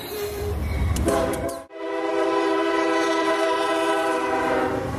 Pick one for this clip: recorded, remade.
remade